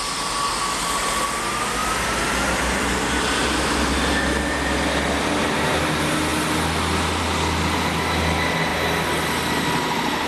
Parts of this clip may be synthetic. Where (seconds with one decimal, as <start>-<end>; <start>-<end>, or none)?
1.8-2.5

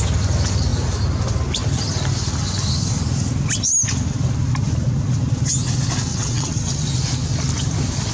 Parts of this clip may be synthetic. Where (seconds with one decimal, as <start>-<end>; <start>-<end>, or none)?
6.1-6.9

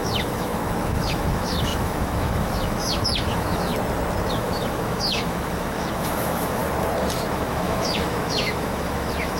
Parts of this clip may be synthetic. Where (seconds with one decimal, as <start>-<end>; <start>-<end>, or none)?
0.0-3.7; 4.3-6.6; 7.3-9.4

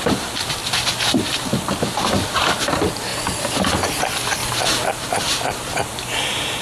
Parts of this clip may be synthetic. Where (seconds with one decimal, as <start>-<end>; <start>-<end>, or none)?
0.0-0.6; 2.6-3.1; 4.0-4.4; 4.9-5.9

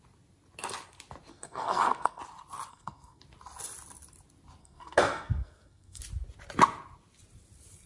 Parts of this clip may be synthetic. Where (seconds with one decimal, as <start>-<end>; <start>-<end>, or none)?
1.3-2.2; 2.7-3.2; 4.6-6.0

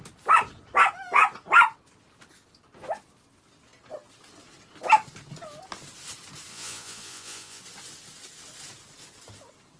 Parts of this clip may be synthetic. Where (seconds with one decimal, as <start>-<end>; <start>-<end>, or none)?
6.5-7.6

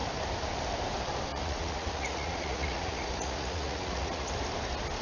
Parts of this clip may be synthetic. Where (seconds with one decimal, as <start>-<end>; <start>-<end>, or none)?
1.3-4.3

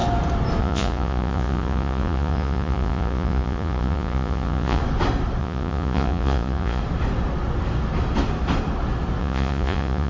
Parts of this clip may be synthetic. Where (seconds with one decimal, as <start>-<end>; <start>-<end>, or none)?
0.6-4.8; 5.4-6.8; 9.2-10.1